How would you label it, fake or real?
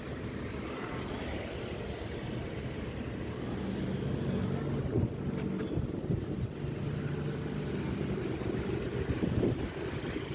real